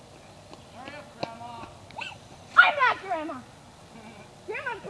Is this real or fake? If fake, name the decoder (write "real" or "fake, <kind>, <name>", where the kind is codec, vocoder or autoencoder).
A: real